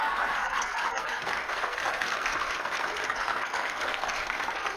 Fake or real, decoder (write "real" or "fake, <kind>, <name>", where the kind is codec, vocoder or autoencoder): fake, codec, SNAC